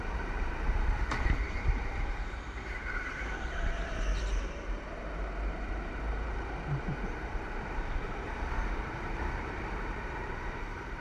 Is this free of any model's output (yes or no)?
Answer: no